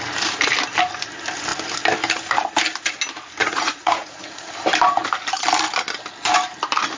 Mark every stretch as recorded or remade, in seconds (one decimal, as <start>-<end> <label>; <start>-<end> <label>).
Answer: 0.0-3.4 recorded; 3.4-4.5 remade; 4.5-7.0 recorded